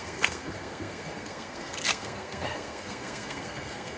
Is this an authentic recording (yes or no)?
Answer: no